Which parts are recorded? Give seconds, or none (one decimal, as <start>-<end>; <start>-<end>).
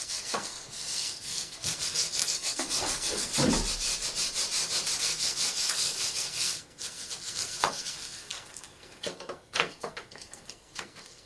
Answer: 3.3-5.0